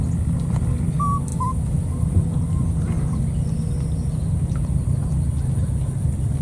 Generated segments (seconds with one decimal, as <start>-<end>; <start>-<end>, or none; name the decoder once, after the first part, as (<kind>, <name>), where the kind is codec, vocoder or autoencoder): none